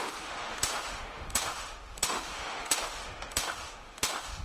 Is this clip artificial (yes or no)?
yes